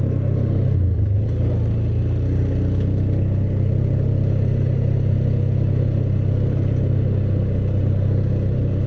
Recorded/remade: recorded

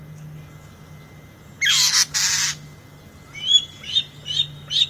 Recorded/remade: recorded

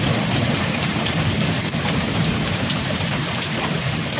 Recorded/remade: remade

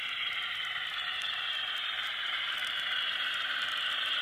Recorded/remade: remade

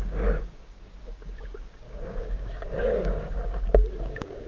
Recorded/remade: remade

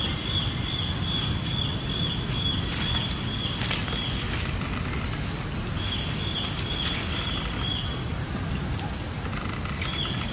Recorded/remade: recorded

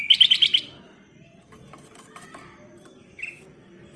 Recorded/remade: recorded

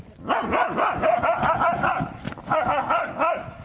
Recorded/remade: recorded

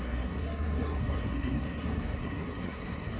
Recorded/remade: remade